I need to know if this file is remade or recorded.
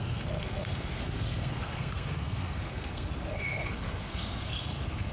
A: remade